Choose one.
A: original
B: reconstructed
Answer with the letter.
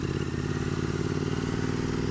A